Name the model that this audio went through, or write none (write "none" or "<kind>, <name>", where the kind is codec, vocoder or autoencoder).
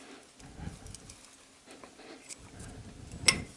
none